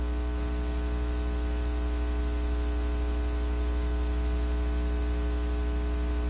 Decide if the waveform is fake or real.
real